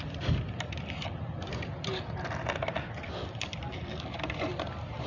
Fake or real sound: real